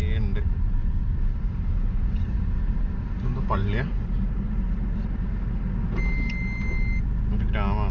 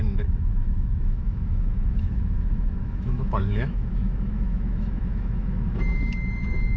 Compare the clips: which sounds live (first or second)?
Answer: first